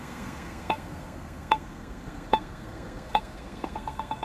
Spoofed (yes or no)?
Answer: yes